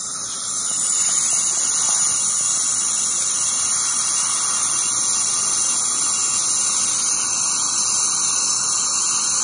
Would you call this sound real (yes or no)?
yes